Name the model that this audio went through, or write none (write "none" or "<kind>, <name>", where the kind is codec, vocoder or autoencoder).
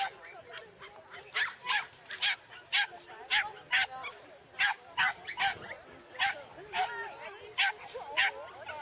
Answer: none